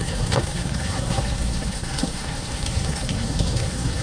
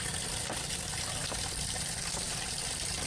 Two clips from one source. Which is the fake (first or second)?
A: first